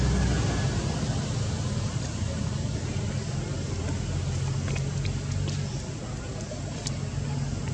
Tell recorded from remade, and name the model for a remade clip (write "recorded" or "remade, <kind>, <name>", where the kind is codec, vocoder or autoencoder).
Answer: recorded